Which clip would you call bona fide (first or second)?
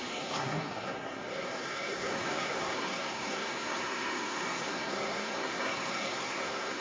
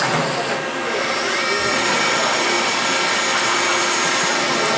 second